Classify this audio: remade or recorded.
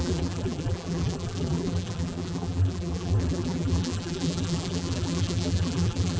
remade